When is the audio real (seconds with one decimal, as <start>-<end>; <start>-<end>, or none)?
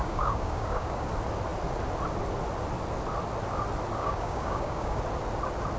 1.1-4.0; 5.0-5.8